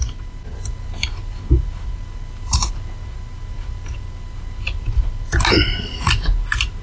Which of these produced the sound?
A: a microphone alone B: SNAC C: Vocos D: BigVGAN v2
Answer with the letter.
A